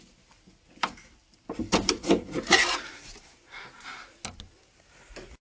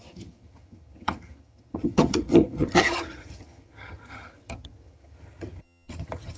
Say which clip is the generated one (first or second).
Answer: second